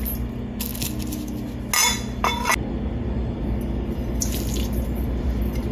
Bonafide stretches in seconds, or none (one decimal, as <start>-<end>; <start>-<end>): 0.0-5.7